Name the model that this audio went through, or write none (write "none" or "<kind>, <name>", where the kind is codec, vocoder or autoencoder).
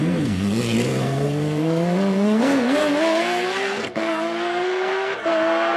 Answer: codec, SNAC